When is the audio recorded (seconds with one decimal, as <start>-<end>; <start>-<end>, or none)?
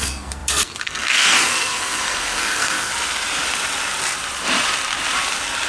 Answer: 2.9-5.7